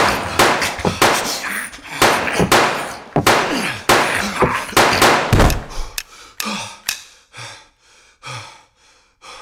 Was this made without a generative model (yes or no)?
yes